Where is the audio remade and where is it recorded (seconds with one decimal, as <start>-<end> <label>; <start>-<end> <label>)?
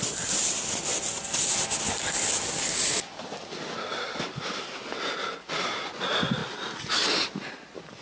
0.0-8.0 recorded